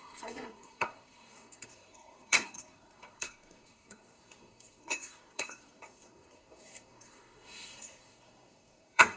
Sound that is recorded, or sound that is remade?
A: remade